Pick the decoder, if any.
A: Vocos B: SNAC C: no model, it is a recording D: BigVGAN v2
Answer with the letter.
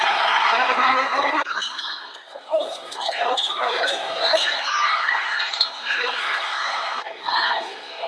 B